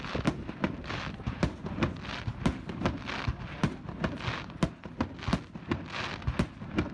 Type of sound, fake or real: real